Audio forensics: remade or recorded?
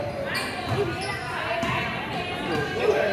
recorded